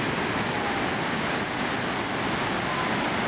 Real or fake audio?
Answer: real